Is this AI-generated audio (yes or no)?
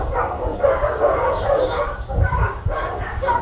yes